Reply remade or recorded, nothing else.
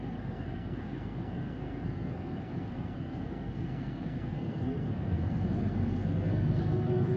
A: remade